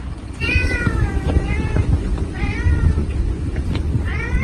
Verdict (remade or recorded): remade